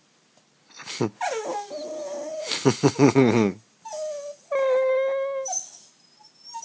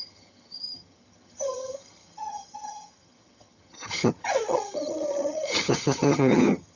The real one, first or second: first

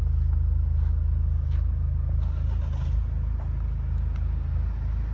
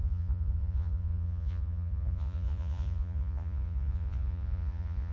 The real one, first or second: first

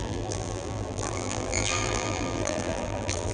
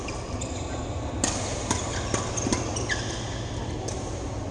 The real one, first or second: second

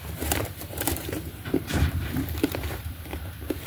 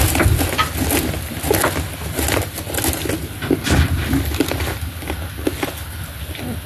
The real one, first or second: second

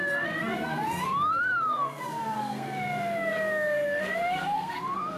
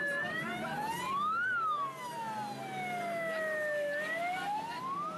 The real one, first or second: second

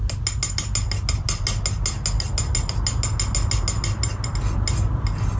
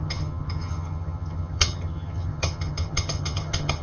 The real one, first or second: first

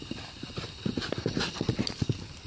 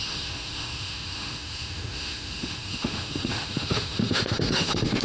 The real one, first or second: first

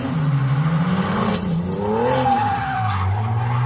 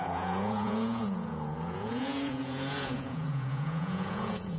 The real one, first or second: first